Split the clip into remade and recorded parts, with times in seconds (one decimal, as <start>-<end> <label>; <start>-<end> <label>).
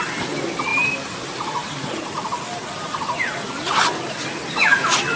0.0-5.2 recorded